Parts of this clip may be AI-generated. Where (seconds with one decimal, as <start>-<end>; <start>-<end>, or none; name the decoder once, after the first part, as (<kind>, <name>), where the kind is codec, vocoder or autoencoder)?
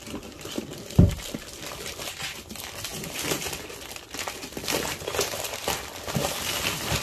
0.0-7.0 (vocoder, BigVGAN v2)